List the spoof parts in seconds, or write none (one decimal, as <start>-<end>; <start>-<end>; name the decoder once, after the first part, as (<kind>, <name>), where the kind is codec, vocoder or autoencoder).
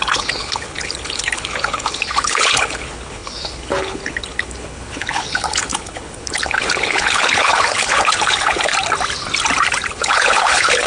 0.0-8.7 (codec, HILCodec); 9.9-10.9